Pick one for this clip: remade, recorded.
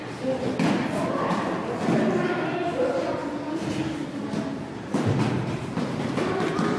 recorded